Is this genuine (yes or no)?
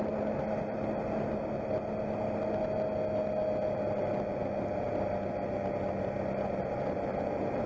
yes